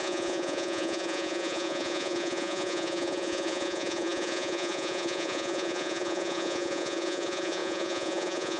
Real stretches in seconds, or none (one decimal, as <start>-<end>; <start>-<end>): none